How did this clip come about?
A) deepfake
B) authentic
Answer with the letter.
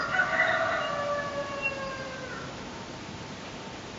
B